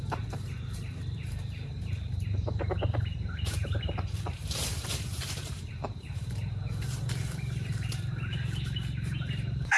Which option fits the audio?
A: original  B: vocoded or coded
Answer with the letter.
B